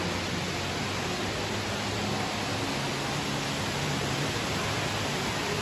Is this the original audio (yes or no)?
yes